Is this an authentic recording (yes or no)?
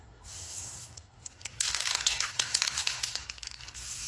no